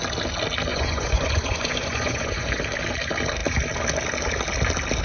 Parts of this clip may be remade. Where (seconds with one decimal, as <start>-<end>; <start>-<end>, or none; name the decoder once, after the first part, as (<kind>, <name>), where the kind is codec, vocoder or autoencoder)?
0.7-2.6 (vocoder, Vocos)